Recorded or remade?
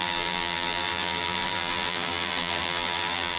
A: remade